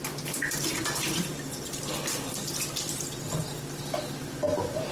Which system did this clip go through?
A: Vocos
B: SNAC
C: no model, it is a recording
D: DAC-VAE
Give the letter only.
C